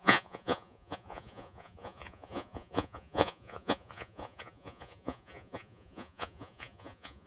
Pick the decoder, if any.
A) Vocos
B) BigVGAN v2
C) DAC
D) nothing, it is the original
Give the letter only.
A